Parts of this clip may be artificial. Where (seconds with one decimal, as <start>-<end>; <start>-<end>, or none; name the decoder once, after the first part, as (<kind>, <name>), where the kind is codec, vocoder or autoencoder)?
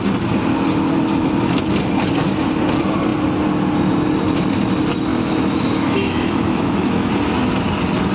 5.1-7.1 (autoencoder, DAC-VAE)